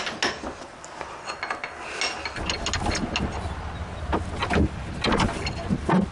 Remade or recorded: recorded